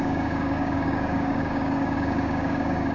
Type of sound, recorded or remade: remade